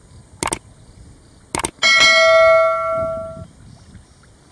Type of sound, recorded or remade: recorded